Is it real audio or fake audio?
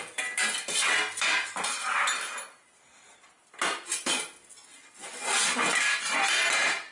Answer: real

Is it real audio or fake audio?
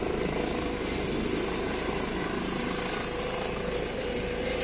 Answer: real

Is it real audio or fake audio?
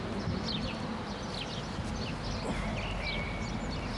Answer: real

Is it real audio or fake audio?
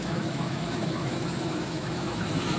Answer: fake